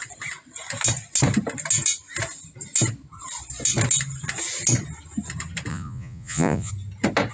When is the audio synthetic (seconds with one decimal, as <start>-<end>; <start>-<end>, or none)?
5.7-6.7